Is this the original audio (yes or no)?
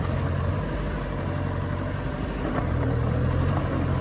yes